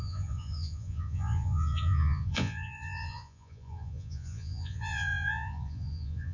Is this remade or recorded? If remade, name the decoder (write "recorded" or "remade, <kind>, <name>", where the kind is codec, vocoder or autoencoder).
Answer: remade, vocoder, Vocos